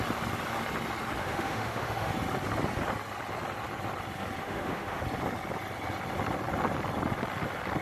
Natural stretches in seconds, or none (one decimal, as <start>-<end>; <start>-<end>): 0.0-1.2; 2.1-4.4; 5.0-7.8

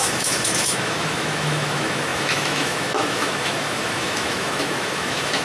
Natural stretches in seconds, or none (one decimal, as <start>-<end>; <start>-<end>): none

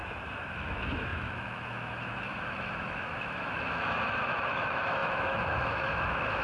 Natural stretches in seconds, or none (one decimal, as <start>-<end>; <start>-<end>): 0.0-0.5

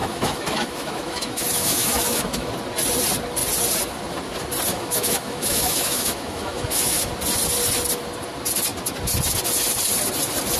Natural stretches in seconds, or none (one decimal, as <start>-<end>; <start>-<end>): 2.5-4.7; 7.1-10.6

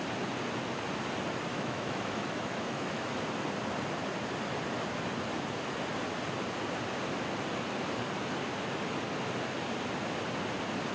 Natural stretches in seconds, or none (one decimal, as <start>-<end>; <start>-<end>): 0.0-1.5; 3.1-10.9

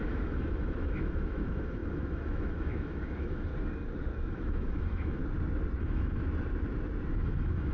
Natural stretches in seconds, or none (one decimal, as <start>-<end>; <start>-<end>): 3.5-4.3; 5.2-5.8; 6.2-7.1